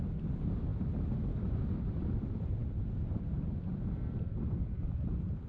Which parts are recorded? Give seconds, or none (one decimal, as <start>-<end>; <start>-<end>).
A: 0.7-1.3; 2.6-4.1